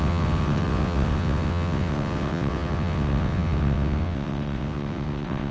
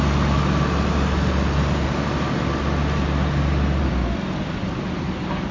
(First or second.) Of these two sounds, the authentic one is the second